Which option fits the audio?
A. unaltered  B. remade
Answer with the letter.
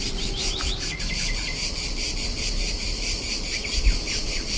B